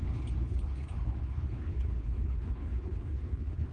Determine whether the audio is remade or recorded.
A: remade